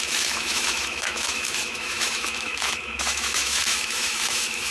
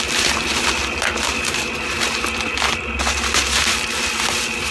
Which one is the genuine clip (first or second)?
second